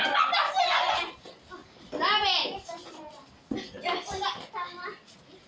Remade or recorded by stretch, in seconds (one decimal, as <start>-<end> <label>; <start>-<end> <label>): 0.0-5.5 recorded